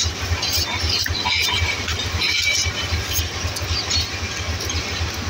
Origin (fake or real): real